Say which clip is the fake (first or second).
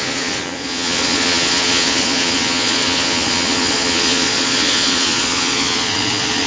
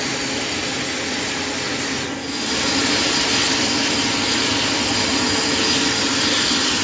first